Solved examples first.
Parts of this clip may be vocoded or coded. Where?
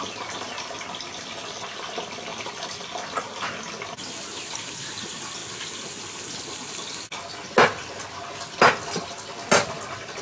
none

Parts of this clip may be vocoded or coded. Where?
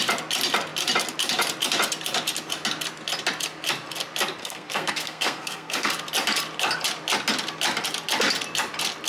4.4-5.9 (codec, SNAC)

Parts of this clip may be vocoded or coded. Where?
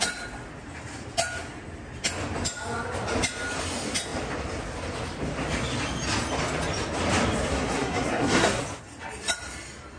7.5-8.6 (codec, SNAC)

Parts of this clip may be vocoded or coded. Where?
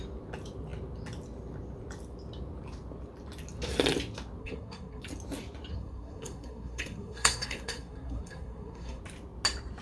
4.4-5.0 (codec, SNAC); 5.7-9.0